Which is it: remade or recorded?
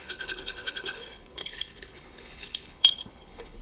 remade